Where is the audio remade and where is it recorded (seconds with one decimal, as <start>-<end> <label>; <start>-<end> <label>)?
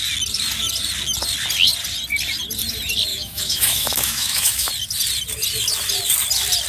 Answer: 0.0-3.1 recorded; 3.1-4.7 remade; 4.7-6.7 recorded